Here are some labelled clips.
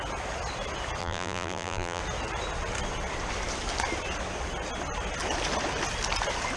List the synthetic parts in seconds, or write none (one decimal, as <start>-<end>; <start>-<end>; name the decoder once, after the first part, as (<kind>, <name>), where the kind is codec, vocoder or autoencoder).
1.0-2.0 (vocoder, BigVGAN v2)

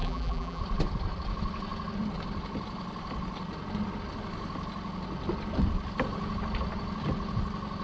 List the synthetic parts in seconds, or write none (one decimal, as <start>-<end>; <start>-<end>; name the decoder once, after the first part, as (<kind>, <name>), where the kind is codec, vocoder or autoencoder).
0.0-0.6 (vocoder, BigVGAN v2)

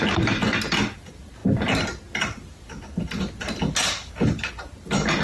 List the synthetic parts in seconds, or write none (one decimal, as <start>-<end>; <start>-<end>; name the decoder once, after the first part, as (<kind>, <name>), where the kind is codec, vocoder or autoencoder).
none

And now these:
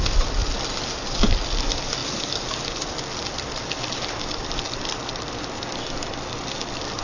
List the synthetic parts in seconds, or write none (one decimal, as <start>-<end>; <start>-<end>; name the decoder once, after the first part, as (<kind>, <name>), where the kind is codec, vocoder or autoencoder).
2.0-5.5 (vocoder, BigVGAN v2)

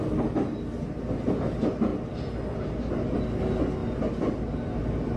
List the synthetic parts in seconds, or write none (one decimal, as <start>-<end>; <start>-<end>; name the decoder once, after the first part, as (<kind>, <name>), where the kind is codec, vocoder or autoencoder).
none

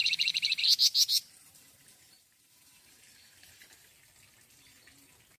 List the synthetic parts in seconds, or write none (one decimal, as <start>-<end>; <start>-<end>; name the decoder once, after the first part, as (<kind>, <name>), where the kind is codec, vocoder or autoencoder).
0.0-0.6 (vocoder, BigVGAN v2); 1.1-3.9